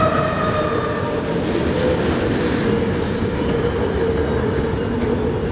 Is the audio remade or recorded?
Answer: recorded